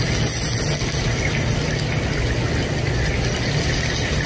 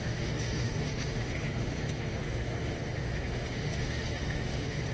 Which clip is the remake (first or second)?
second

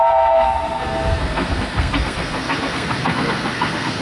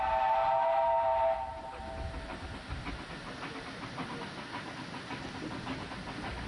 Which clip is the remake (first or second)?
first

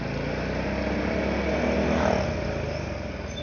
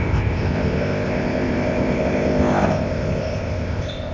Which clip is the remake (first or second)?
second